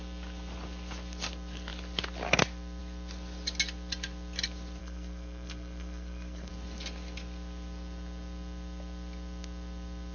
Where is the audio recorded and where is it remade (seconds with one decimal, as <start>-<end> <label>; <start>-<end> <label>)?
0.0-4.8 recorded; 4.8-6.5 remade; 6.5-10.1 recorded